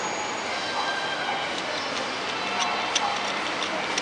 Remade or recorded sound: recorded